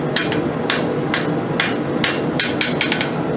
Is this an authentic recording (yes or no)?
yes